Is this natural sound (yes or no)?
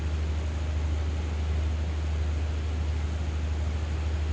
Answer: yes